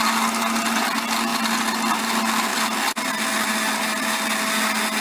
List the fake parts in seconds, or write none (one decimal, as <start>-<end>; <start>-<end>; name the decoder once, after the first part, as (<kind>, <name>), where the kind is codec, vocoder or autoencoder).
none